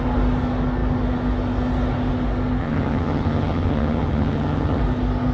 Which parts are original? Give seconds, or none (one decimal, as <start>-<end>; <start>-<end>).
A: 0.0-2.6; 4.8-5.3